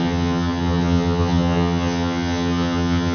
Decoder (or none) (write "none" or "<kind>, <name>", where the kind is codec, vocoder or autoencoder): vocoder, HiFi-GAN